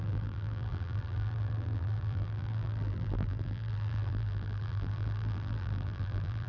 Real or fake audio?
fake